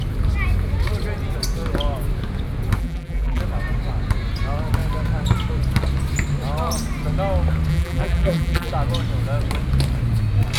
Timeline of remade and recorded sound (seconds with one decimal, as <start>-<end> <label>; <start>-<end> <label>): 0.0-2.8 recorded; 2.8-3.4 remade; 3.4-7.7 recorded; 7.7-8.7 remade; 8.7-10.6 recorded